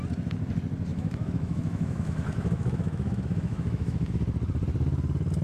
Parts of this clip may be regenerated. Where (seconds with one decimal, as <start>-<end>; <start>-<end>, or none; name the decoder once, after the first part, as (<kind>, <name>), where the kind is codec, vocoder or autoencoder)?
0.9-4.1 (autoencoder, DAC-VAE)